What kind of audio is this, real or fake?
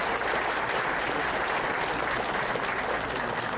real